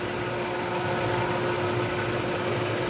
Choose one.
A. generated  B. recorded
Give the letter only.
B